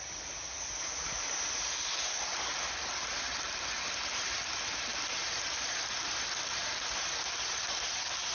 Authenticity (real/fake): real